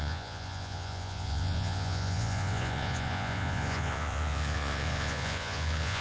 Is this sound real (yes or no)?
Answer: no